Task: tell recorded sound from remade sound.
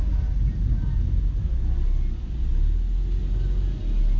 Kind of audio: recorded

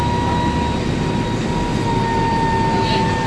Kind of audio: recorded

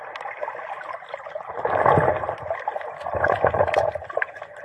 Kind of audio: recorded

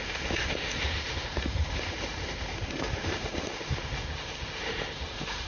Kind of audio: remade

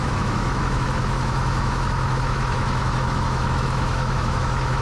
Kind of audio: remade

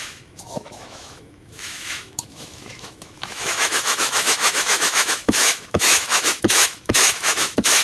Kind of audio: remade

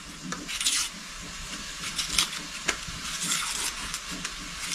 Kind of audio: recorded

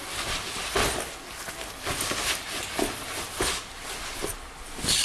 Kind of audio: recorded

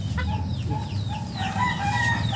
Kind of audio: recorded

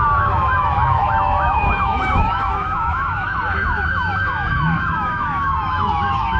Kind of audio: remade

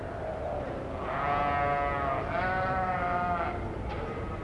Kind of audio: recorded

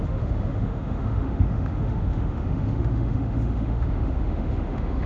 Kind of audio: remade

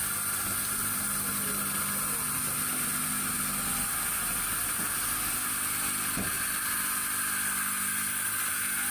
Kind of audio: recorded